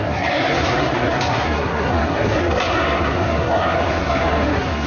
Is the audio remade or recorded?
remade